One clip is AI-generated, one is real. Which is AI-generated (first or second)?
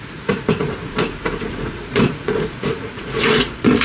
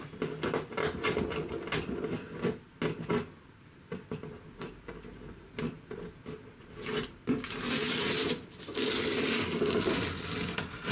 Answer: first